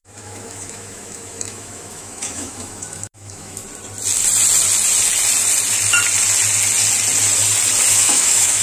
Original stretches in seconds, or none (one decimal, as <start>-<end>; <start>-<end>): 3.6-7.9